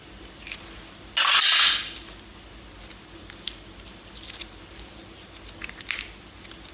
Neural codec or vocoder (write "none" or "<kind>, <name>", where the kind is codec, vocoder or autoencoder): none